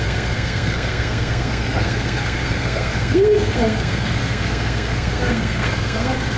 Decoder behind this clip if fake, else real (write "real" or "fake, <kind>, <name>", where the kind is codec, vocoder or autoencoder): fake, codec, SNAC